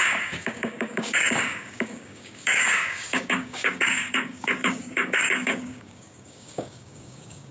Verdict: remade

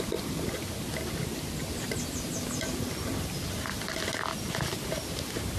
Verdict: recorded